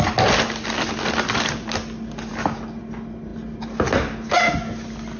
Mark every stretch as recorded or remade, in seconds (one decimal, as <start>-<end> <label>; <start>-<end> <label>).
0.0-5.2 recorded